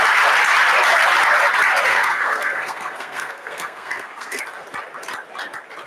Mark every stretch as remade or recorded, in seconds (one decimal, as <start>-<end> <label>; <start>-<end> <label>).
0.0-1.9 recorded; 1.9-4.4 remade; 4.4-5.9 recorded